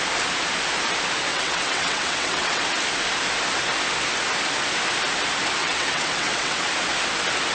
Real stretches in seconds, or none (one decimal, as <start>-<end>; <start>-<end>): 0.0-1.3; 2.6-5.6; 6.6-7.5